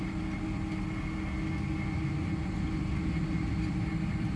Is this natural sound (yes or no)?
yes